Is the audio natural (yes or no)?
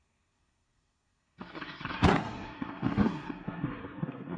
no